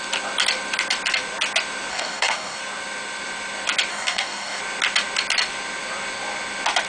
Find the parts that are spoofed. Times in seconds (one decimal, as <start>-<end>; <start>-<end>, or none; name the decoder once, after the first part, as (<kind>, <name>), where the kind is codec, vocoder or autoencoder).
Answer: 1.9-2.6 (codec, DAC); 3.9-4.6